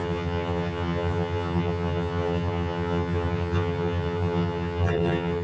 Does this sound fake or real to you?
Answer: fake